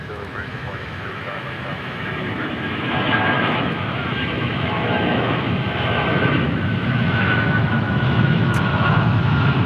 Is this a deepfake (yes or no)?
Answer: yes